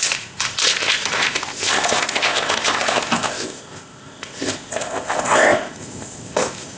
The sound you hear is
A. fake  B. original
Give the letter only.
A